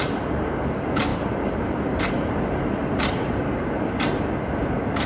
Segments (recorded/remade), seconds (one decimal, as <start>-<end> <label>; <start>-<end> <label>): 0.0-1.1 recorded; 1.1-4.2 remade; 4.2-5.1 recorded